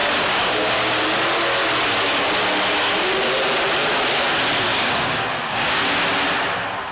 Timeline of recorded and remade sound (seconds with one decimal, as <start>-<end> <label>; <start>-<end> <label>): 0.0-0.9 remade; 0.9-4.7 recorded; 4.7-5.8 remade; 5.8-6.9 recorded